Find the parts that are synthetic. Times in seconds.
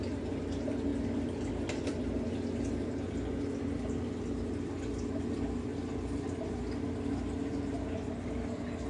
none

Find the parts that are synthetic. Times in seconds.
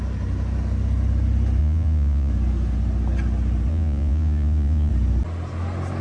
1.6-2.3 (vocoder, Vocos); 3.7-4.9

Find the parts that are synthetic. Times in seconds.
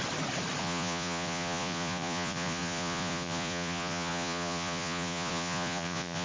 0.6-6.2 (vocoder, Vocos)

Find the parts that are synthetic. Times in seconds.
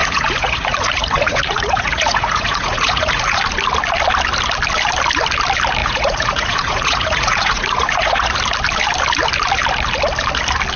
0.0-3.4 (vocoder, Vocos); 5.8-8.3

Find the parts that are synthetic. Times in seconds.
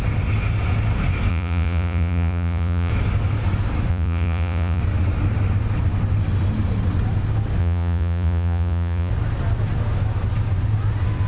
1.3-2.9 (vocoder, Vocos); 3.9-4.8; 7.6-9.1